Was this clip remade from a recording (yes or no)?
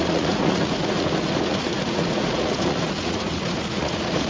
yes